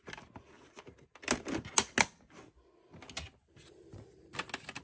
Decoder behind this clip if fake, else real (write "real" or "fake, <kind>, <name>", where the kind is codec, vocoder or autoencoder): real